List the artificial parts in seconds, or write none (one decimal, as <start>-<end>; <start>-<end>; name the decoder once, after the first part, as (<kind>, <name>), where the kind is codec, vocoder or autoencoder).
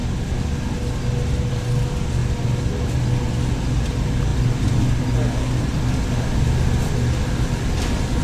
none